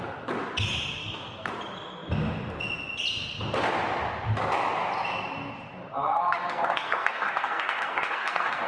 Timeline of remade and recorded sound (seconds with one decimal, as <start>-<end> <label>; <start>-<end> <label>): 0.0-1.0 recorded; 1.0-1.5 remade; 1.5-5.9 recorded; 5.9-8.7 remade